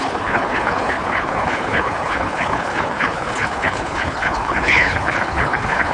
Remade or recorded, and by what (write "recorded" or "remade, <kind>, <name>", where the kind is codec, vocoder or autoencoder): remade, codec, HILCodec